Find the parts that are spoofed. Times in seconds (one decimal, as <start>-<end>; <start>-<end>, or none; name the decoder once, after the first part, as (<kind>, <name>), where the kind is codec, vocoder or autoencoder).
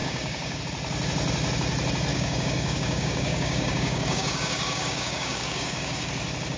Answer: 0.0-0.6 (codec, DAC); 2.1-6.1